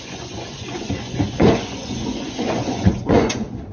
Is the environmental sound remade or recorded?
remade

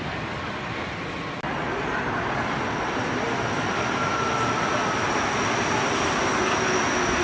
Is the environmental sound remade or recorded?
recorded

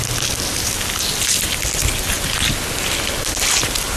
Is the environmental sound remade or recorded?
recorded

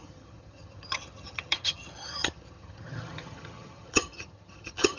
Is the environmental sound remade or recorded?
remade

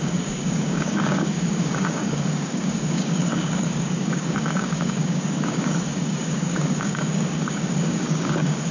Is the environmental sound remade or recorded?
remade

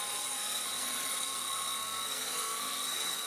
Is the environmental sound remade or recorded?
remade